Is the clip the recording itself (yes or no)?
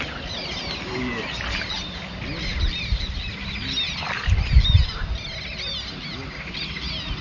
yes